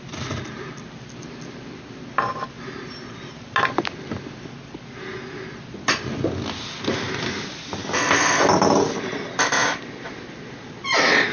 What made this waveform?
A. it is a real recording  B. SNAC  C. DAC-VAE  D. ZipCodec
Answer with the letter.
A